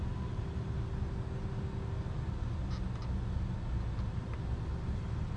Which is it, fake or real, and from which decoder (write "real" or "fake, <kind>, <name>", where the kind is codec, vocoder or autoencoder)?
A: real